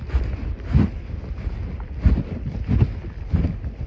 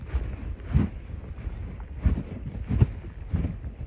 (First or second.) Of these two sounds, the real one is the first